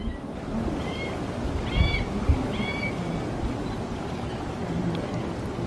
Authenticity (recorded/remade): recorded